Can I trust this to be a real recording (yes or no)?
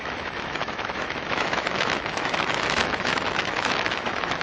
no